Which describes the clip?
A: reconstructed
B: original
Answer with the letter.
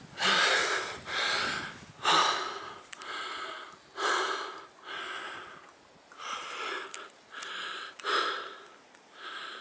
B